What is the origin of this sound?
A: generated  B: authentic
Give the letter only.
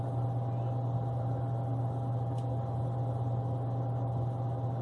B